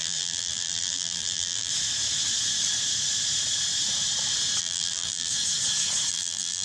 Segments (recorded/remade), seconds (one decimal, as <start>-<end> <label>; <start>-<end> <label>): 0.0-1.7 remade; 1.7-4.6 recorded; 4.6-5.3 remade; 5.3-6.1 recorded; 6.1-6.6 remade